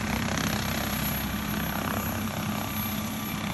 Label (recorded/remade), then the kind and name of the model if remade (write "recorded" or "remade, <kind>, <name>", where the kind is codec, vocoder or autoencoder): recorded